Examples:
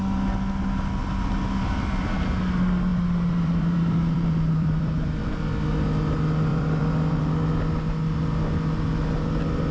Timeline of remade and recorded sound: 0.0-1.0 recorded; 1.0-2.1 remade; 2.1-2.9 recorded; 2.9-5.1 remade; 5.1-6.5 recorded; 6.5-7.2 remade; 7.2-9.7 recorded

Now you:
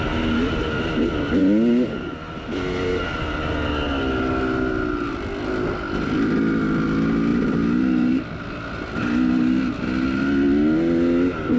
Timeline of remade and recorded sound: 0.0-1.4 recorded; 1.4-1.9 remade; 1.9-7.3 recorded; 7.3-8.2 remade; 8.2-11.6 recorded

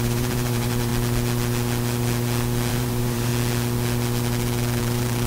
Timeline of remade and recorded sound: 0.0-0.9 remade; 0.9-2.7 recorded; 2.7-3.3 remade; 3.3-4.8 recorded; 4.8-5.3 remade